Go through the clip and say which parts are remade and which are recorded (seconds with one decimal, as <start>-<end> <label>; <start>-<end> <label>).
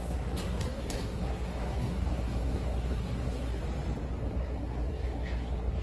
0.0-3.6 remade; 3.6-4.2 recorded; 4.2-5.8 remade